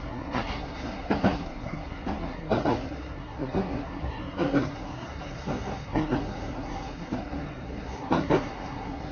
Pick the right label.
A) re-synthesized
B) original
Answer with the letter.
A